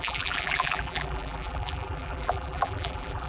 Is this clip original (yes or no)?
no